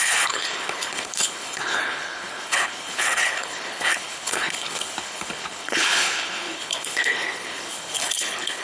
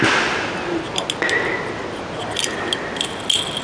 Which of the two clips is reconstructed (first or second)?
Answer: first